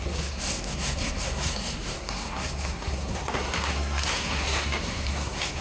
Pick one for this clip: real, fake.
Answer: fake